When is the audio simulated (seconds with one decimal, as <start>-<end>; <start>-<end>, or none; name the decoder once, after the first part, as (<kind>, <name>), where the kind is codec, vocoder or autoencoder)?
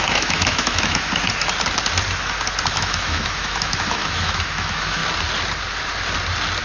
0.0-1.1 (autoencoder, DAC-VAE); 2.7-5.0